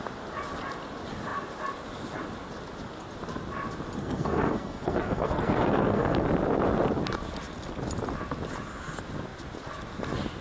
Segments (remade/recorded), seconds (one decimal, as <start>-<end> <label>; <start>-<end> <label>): 0.0-4.0 recorded; 4.0-6.2 remade; 6.2-10.4 recorded